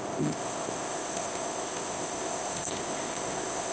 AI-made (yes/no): yes